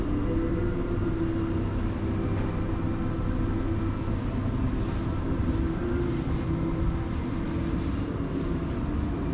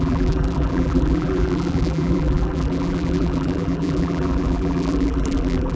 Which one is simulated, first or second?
second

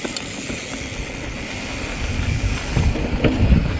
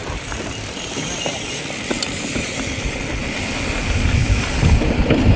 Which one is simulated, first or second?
second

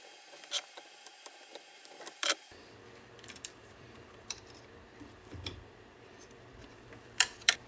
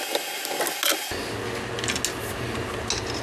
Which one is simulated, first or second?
first